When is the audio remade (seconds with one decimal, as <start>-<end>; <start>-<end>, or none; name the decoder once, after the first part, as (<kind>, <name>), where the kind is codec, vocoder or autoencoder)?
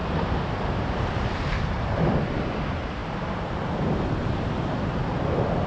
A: 0.0-2.0 (vocoder, BigVGAN v2)